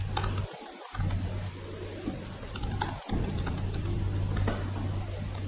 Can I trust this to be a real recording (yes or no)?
yes